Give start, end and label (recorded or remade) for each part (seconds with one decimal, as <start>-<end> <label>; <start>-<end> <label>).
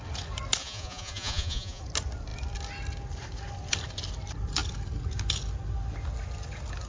0.0-0.6 recorded; 0.6-1.8 remade; 1.8-6.9 recorded